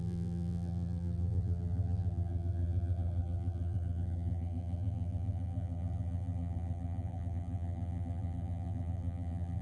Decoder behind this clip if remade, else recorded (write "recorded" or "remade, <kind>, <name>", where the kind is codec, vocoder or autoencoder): remade, vocoder, BigVGAN v2